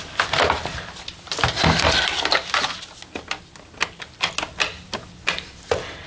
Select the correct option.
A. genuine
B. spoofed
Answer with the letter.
A